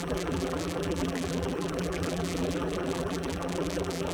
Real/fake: fake